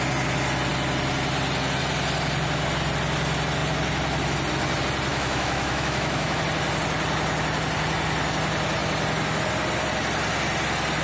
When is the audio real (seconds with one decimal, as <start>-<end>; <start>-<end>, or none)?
0.0-5.1; 6.4-11.0